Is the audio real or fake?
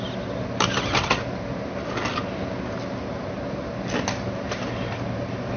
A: real